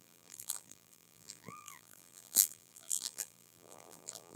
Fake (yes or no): yes